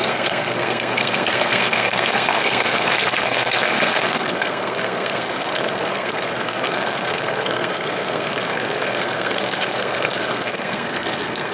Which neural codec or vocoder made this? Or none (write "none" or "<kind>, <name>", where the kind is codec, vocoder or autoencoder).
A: codec, SNAC